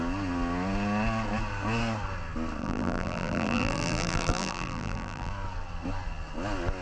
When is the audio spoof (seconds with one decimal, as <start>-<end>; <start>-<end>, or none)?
2.6-5.3